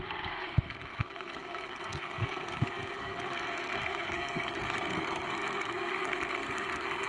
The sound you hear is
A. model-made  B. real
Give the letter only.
A